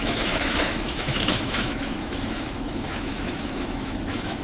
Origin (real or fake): fake